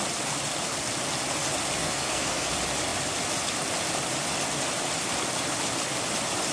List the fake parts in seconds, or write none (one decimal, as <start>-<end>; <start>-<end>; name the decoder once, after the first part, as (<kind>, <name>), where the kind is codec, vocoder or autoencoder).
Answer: 1.8-2.5 (codec, SNAC)